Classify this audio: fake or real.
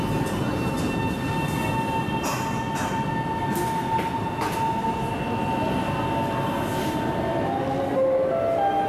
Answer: real